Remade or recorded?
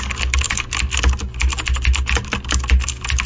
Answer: recorded